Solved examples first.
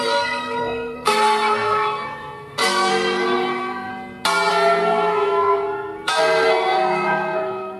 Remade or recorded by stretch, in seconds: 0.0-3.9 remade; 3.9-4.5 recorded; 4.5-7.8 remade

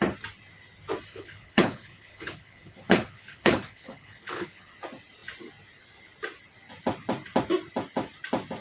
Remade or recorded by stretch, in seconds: 0.0-1.1 recorded; 1.1-4.7 remade; 4.7-8.6 recorded

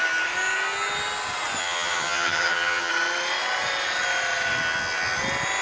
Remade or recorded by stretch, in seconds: 0.0-1.6 recorded; 1.6-2.9 remade; 2.9-5.6 recorded

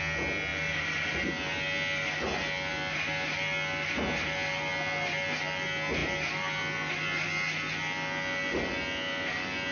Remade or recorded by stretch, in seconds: 0.0-9.7 recorded

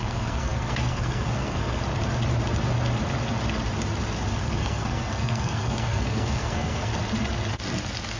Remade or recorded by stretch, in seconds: 0.0-1.8 remade; 1.8-4.4 recorded; 4.4-6.9 remade; 6.9-8.2 recorded

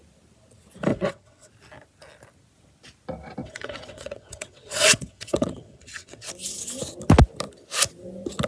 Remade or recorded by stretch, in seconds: 0.0-0.9 recorded; 0.9-1.5 remade; 1.5-3.4 recorded; 3.4-6.3 remade; 6.3-8.5 recorded

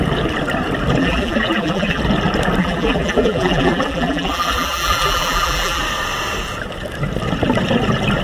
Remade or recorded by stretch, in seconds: 0.0-1.0 recorded; 1.0-2.0 remade; 2.0-2.6 recorded; 2.6-5.8 remade; 5.8-8.2 recorded

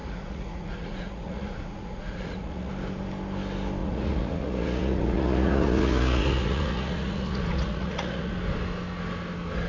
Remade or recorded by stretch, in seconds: 0.0-2.7 remade; 2.7-3.8 recorded; 3.8-8.3 remade; 8.3-9.7 recorded